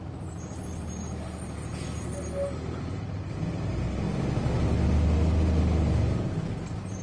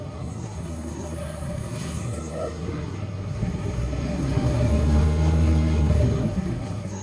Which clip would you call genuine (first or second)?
first